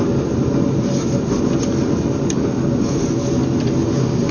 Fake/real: real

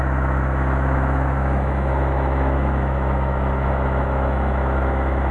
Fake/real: fake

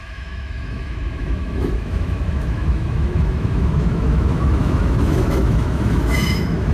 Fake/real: fake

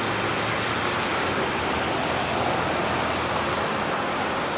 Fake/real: real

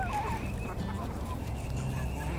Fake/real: real